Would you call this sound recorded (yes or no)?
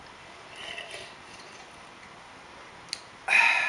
yes